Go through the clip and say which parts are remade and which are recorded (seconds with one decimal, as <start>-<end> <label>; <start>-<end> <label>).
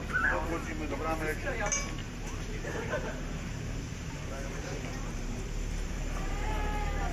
0.0-2.0 recorded; 2.0-6.3 remade; 6.3-7.1 recorded